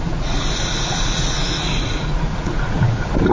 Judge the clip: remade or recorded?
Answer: remade